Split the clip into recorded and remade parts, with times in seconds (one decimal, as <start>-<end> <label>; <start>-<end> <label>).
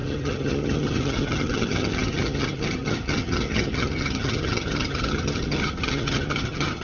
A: 0.0-6.8 remade